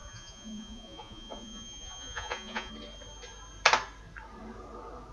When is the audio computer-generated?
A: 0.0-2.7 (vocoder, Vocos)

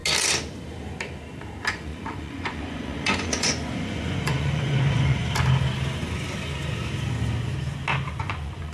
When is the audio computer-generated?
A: 1.7-5.2 (vocoder, Vocos); 8.2-8.7